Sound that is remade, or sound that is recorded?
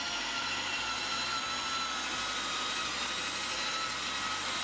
recorded